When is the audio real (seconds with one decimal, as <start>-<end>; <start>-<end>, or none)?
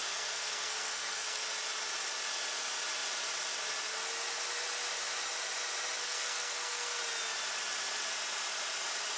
1.5-6.0; 7.0-9.2